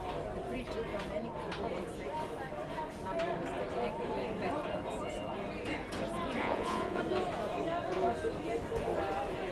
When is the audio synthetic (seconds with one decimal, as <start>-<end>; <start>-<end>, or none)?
6.4-7.0